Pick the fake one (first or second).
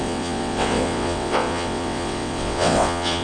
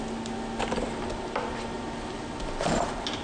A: first